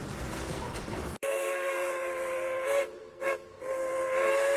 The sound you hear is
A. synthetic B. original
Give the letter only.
A